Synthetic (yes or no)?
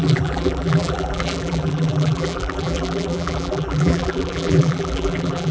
yes